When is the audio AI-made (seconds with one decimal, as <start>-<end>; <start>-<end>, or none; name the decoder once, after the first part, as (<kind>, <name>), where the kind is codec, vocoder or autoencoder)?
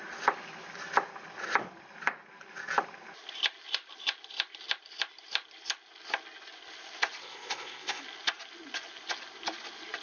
7.2-8.0 (codec, ZipCodec)